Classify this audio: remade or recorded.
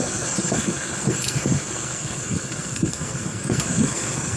remade